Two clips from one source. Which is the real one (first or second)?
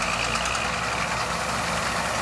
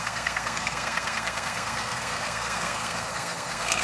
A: first